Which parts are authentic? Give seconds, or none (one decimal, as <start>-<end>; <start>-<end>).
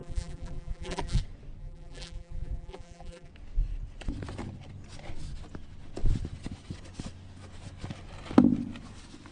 1.2-1.6; 3.3-9.3